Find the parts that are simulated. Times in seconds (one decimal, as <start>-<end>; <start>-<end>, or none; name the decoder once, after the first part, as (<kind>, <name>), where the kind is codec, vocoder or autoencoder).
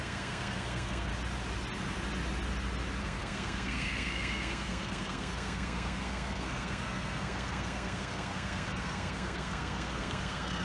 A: 0.0-1.1 (codec, SNAC); 3.0-10.6